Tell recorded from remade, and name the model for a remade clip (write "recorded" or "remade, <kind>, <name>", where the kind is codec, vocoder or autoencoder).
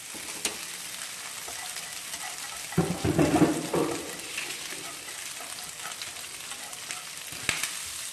recorded